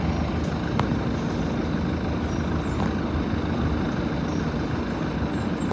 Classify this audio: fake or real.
real